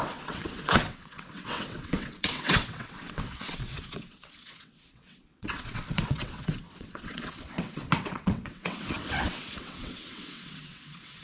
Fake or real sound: fake